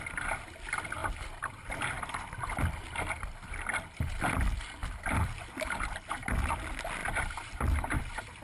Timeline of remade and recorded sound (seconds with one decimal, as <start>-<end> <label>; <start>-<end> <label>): 0.0-1.0 recorded; 1.0-1.7 remade; 1.7-4.8 recorded; 4.8-5.5 remade; 5.5-7.0 recorded; 7.0-8.0 remade; 8.0-8.4 recorded